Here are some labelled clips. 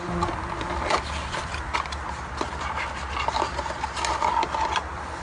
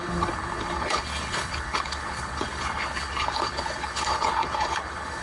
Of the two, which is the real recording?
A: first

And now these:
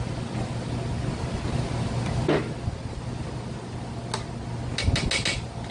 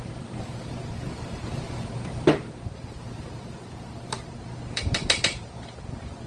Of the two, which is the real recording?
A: first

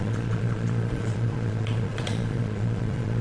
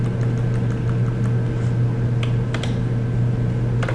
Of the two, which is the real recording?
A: second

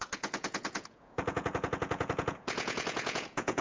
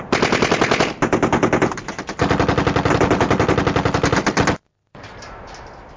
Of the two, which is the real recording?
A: second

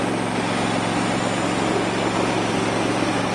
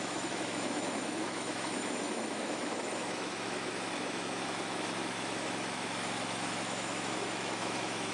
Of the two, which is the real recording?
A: first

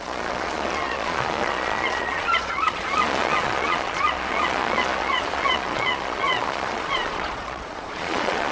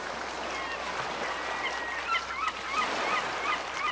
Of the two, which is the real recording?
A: second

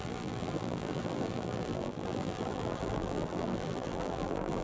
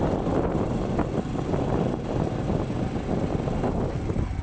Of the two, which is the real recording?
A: second